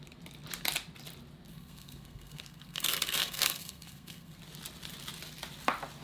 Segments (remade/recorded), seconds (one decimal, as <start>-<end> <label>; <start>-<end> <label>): 0.0-1.5 recorded; 1.5-4.4 remade; 4.4-6.0 recorded